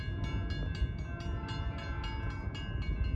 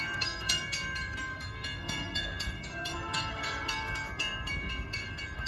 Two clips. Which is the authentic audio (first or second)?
first